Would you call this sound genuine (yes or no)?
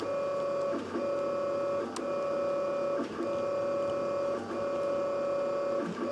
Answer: yes